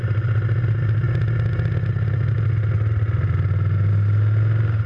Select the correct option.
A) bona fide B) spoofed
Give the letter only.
A